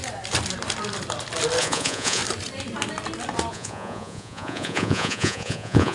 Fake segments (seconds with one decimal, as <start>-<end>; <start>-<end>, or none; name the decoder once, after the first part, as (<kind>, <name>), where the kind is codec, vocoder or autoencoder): 1.6-2.2 (vocoder, Vocos); 3.5-5.9